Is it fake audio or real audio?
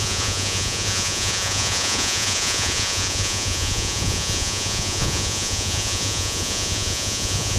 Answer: fake